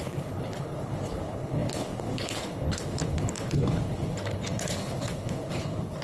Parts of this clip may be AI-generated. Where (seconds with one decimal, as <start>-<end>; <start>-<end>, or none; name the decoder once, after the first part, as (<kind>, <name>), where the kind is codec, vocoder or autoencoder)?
0.0-6.0 (codec, HILCodec)